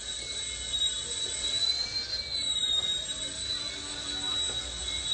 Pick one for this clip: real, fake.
real